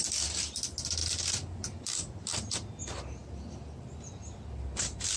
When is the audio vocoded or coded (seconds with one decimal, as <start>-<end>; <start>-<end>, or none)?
none